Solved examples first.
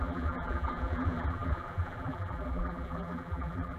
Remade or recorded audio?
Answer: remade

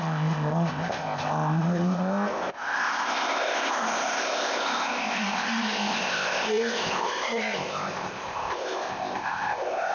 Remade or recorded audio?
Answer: remade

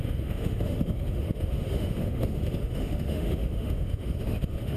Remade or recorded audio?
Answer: remade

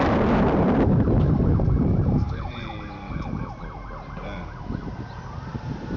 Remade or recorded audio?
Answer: remade